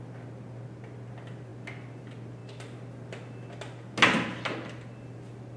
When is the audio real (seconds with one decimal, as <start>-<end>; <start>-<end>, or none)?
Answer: 0.0-5.6